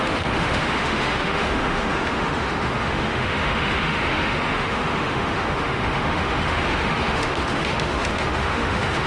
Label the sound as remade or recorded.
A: remade